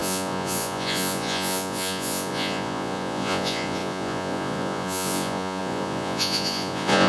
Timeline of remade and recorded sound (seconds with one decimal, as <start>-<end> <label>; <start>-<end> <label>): 0.0-7.1 remade